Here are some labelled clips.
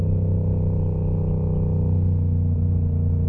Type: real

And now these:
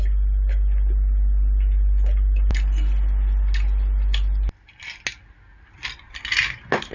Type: real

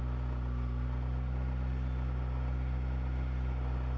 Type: real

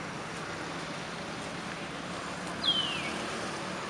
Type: real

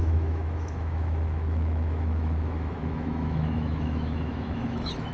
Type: fake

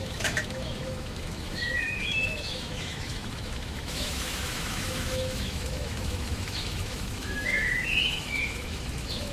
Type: fake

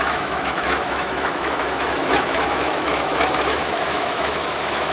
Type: fake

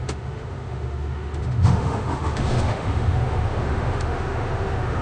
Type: fake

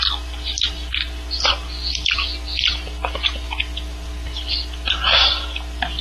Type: real